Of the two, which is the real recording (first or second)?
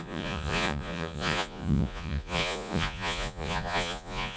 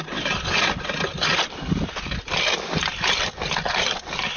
second